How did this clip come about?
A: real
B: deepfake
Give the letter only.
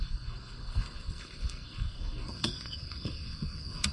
B